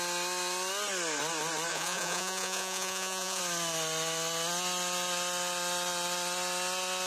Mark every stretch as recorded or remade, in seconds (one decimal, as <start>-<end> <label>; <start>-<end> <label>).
0.0-1.7 recorded; 1.7-3.4 remade; 3.4-7.1 recorded

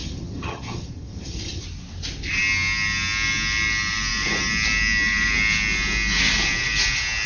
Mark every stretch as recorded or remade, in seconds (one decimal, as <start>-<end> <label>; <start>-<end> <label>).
0.0-1.6 remade; 1.6-7.3 recorded

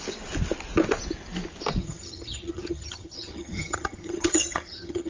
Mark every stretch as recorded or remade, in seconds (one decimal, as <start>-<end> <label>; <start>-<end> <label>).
0.0-1.8 recorded; 1.8-5.1 remade

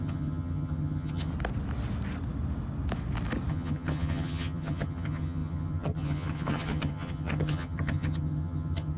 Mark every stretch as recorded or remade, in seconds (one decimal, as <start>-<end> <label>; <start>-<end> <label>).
0.0-1.3 remade; 1.3-3.5 recorded; 3.5-9.0 remade

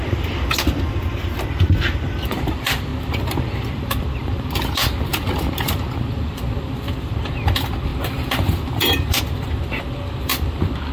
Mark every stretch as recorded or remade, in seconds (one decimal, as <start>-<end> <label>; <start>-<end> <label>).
0.0-2.9 remade; 2.9-3.8 recorded; 3.8-5.1 remade; 5.1-6.1 recorded; 6.1-10.9 remade

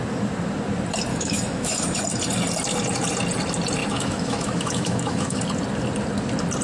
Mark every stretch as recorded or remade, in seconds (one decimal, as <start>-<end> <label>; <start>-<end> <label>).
0.0-1.1 recorded; 1.1-2.0 remade; 2.0-3.8 recorded; 3.8-5.4 remade; 5.4-6.6 recorded

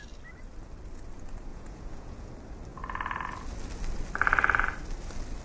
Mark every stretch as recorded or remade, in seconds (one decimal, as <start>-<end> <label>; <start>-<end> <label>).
0.0-1.5 recorded; 1.5-2.3 remade; 2.3-5.4 recorded